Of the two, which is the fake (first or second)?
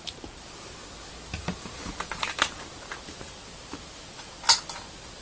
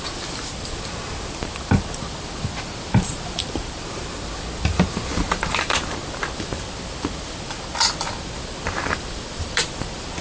second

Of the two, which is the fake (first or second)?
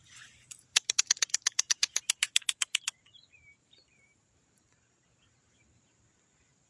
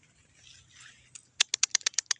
first